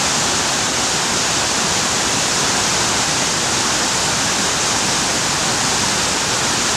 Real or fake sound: real